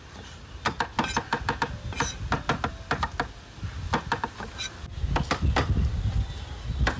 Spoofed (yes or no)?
no